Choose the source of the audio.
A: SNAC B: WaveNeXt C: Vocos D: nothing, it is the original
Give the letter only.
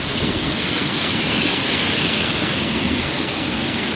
A